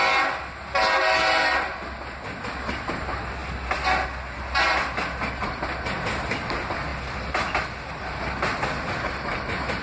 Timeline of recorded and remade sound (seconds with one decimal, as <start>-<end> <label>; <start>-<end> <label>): 0.0-9.8 recorded